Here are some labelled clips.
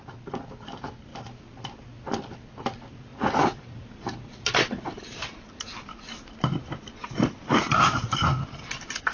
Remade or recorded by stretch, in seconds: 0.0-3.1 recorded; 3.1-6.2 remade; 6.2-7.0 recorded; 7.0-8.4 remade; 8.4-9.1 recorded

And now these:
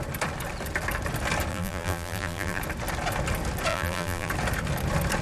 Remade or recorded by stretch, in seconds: 0.0-1.5 recorded; 1.5-2.6 remade; 2.6-3.7 recorded; 3.7-4.3 remade; 4.3-5.2 recorded